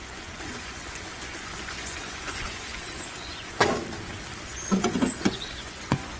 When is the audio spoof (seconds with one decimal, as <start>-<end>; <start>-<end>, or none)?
0.0-3.6; 4.5-6.2